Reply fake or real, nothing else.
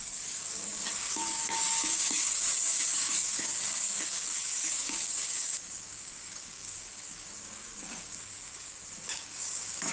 fake